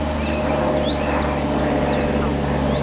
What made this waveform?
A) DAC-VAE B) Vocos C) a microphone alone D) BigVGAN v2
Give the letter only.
C